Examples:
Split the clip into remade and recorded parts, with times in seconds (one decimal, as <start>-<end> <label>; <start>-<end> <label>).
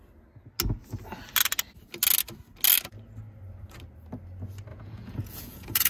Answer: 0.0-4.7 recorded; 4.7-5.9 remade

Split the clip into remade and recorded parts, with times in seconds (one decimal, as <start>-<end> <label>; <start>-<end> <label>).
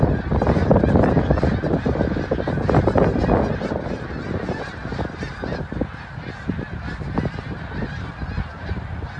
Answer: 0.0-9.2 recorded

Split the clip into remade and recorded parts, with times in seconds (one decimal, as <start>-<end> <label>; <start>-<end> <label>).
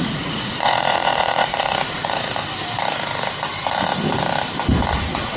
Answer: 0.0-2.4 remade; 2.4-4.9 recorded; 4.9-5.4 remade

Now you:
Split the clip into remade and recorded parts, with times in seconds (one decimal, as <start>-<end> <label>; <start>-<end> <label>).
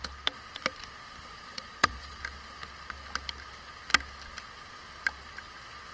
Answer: 0.0-1.3 recorded; 1.3-2.2 remade; 2.2-5.9 recorded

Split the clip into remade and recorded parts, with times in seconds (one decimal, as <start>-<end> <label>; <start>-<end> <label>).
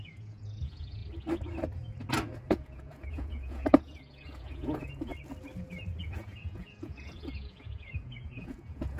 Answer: 0.0-1.0 remade; 1.0-2.5 recorded; 2.5-5.1 remade; 5.1-6.0 recorded; 6.0-9.0 remade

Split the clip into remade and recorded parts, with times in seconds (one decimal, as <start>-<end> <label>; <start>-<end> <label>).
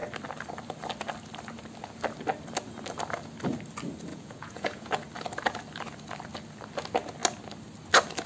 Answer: 0.0-4.1 recorded; 4.1-4.9 remade; 4.9-8.3 recorded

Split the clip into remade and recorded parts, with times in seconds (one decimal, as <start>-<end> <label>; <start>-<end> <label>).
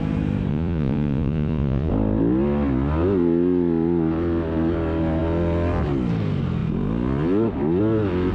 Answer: 0.0-0.5 recorded; 0.5-1.9 remade; 1.9-8.3 recorded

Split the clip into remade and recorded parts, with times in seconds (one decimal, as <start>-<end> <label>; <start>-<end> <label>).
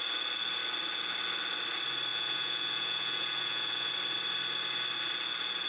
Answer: 0.0-2.1 recorded; 2.1-3.9 remade; 3.9-5.7 recorded